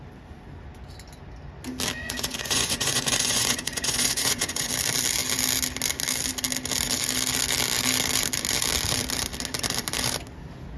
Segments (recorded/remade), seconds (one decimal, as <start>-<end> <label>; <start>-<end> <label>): 0.0-2.0 recorded; 2.0-4.7 remade; 4.7-10.8 recorded